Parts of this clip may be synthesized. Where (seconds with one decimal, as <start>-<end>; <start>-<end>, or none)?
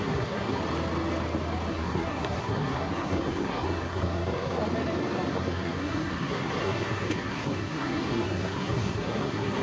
0.0-0.6; 1.7-4.6; 5.3-9.6